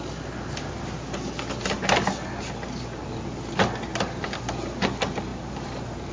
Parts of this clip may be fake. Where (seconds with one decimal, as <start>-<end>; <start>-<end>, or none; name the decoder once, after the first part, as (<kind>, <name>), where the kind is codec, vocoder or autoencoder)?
none